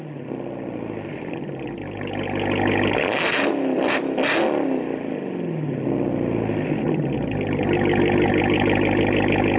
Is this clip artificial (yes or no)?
no